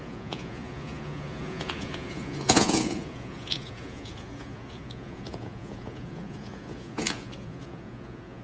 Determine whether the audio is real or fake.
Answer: fake